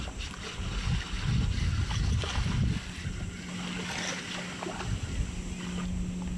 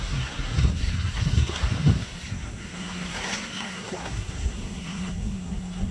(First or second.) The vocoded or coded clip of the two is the second